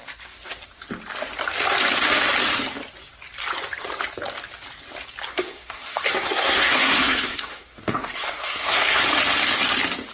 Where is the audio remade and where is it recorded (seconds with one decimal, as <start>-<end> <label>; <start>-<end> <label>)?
0.0-5.3 recorded; 5.3-9.0 remade; 9.0-10.1 recorded